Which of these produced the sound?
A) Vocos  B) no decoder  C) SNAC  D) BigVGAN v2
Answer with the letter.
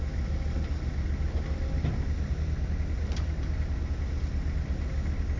B